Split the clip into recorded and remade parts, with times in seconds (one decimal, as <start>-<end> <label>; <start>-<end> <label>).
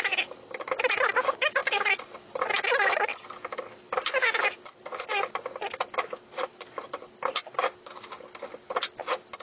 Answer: 0.0-9.4 recorded